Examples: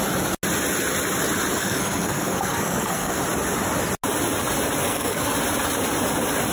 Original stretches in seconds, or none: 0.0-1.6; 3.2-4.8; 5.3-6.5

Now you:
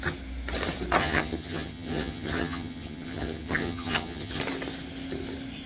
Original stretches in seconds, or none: 0.0-1.0; 4.4-5.7

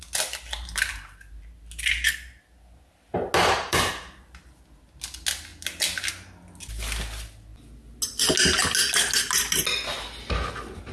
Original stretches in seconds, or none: 0.0-3.4; 3.9-10.9

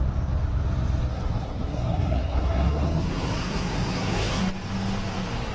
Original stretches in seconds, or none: 0.0-1.1; 4.4-5.5

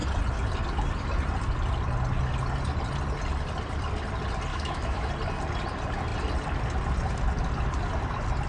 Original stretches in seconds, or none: 0.0-4.5; 5.1-8.5

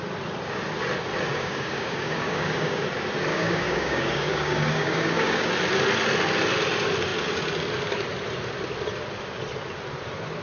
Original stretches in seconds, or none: 0.0-1.3; 2.8-3.3; 5.5-10.4